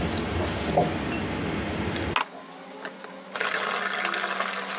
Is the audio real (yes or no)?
yes